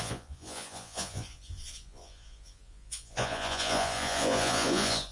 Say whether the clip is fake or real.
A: fake